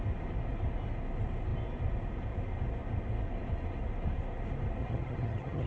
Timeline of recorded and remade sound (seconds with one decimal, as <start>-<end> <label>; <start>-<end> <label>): 0.0-4.8 recorded; 4.8-5.7 remade